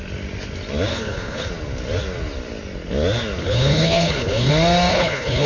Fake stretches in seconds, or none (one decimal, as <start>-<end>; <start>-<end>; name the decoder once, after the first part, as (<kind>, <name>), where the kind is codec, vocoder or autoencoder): 0.9-1.5 (codec, HILCodec); 3.4-4.5; 4.9-5.5